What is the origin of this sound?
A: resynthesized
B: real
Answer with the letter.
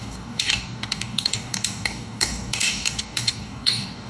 A